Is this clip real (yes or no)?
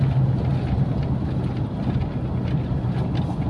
yes